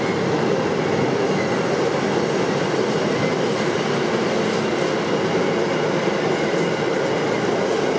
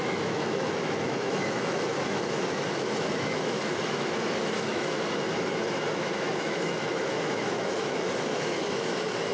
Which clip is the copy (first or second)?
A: second